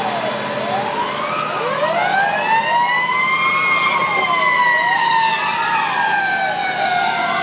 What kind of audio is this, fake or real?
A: real